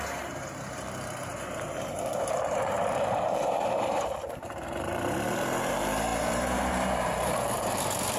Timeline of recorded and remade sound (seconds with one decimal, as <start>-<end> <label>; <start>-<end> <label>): 0.0-8.2 remade